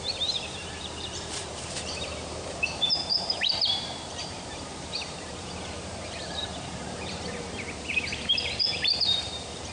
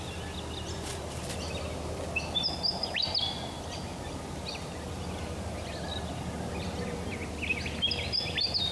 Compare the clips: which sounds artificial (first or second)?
first